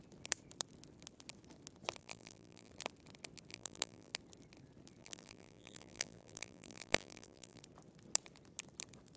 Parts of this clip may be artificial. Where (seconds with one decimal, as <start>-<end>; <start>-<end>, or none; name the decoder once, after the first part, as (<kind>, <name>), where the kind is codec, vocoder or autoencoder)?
2.0-2.7 (vocoder, BigVGAN v2); 3.5-4.1; 5.0-7.6